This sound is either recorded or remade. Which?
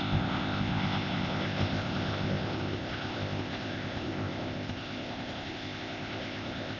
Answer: remade